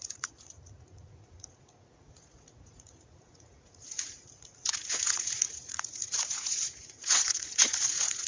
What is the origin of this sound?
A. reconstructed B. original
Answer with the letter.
A